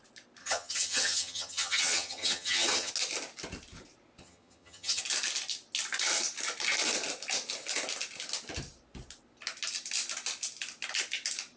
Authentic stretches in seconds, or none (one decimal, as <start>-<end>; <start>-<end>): 0.0-0.4; 2.9-4.2; 5.0-11.6